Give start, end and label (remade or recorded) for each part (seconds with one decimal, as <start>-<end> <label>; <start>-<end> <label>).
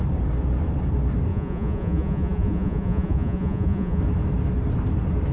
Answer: 0.0-1.3 recorded; 1.3-4.0 remade; 4.0-5.3 recorded